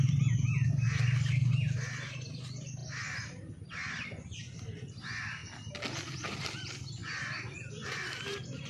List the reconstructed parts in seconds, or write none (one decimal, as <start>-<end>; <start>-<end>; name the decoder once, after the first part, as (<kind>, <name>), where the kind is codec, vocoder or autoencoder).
none